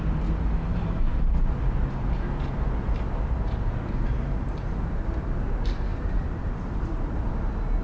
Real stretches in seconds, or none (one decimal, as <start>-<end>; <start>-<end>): 0.0-5.9; 7.3-7.8